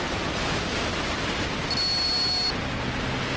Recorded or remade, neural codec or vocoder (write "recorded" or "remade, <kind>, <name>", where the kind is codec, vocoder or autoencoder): recorded